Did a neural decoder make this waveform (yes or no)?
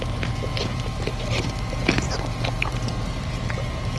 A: yes